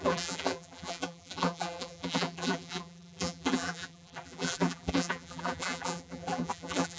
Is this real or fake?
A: fake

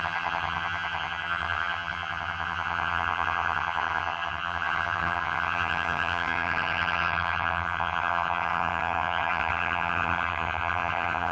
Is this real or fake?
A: fake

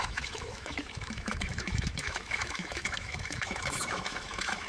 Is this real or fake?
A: fake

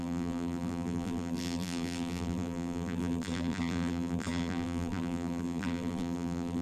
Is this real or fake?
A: fake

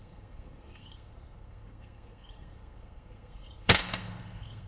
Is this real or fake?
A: fake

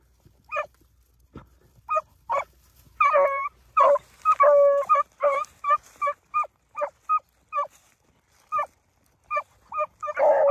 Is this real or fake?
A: real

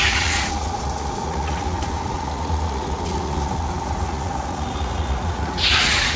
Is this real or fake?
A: fake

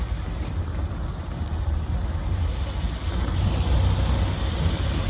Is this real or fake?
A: real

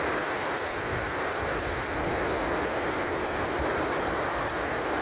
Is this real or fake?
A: real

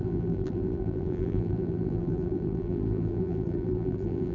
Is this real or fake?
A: fake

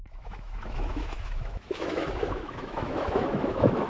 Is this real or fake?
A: fake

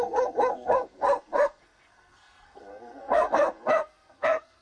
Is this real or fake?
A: fake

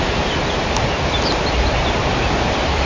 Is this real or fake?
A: real